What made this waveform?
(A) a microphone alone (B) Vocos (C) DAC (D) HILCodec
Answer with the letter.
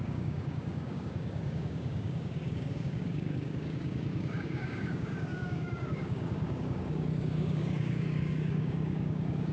C